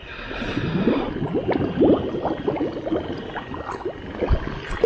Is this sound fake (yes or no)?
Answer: no